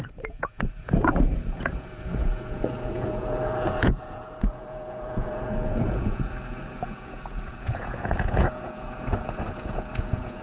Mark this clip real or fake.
fake